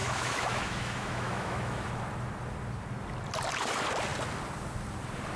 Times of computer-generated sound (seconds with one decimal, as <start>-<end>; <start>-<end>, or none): 0.0-1.9